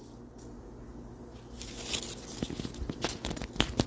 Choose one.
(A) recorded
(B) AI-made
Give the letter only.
A